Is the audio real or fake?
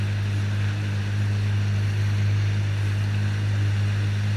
real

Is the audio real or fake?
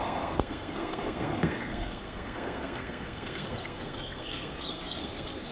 fake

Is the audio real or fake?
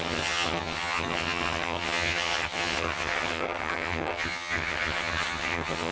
fake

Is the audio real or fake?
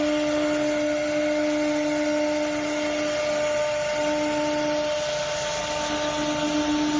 real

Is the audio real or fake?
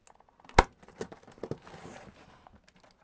real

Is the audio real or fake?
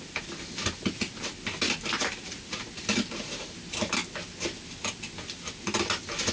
real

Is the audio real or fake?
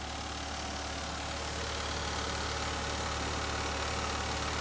real